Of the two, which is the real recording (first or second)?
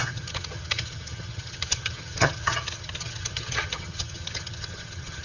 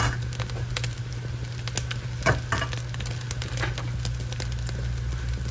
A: second